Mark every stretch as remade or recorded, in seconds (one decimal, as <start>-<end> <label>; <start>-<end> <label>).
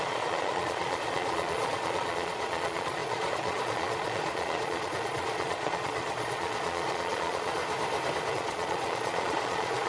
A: 0.0-7.6 remade; 7.6-8.3 recorded; 8.3-9.9 remade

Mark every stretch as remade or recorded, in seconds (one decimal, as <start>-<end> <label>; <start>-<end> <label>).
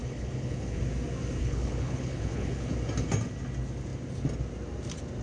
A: 0.0-0.8 remade; 0.8-1.4 recorded; 1.4-2.7 remade; 2.7-5.2 recorded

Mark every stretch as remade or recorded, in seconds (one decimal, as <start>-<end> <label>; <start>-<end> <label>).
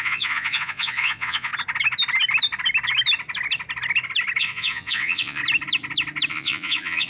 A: 0.0-1.5 remade; 1.5-4.4 recorded; 4.4-5.4 remade; 5.4-6.3 recorded; 6.3-7.1 remade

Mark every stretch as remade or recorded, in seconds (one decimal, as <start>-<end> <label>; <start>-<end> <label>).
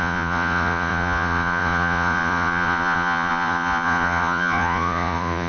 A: 0.0-5.5 remade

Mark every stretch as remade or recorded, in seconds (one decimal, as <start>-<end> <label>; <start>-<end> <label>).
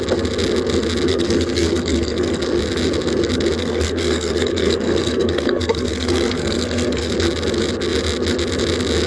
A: 0.0-1.1 recorded; 1.1-2.4 remade; 2.4-3.6 recorded; 3.6-7.1 remade; 7.1-9.1 recorded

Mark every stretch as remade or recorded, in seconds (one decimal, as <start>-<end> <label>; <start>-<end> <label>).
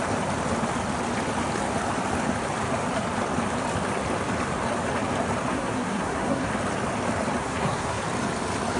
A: 0.0-5.5 recorded; 5.5-6.5 remade; 6.5-7.4 recorded; 7.4-8.0 remade; 8.0-8.8 recorded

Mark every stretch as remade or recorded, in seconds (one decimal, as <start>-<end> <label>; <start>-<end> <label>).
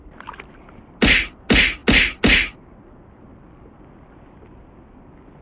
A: 0.0-5.4 recorded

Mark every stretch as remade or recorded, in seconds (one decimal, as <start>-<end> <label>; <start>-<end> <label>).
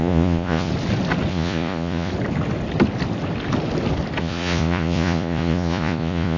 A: 0.0-0.7 remade; 0.7-1.3 recorded; 1.3-2.1 remade; 2.1-4.2 recorded; 4.2-6.4 remade